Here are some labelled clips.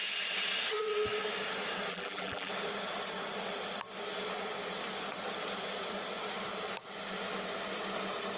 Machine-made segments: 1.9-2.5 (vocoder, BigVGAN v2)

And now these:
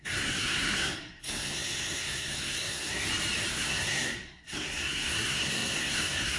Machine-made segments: 0.0-3.0 (codec, SNAC); 3.5-6.4

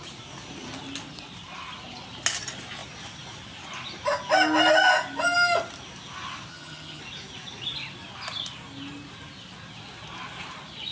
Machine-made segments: 6.5-7.0 (vocoder, HiFi-GAN)

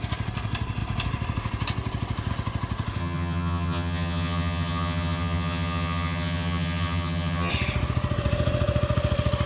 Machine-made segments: 3.0-7.5 (vocoder, HiFi-GAN)

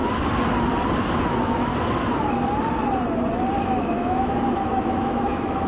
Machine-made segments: 1.2-1.7 (autoencoder, DAC-VAE); 3.6-5.7

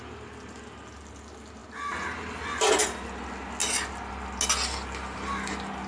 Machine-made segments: none

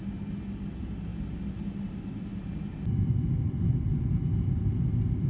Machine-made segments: none